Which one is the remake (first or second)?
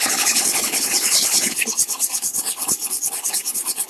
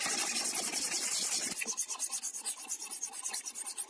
first